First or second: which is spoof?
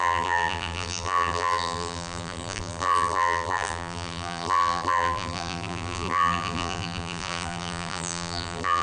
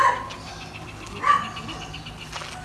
first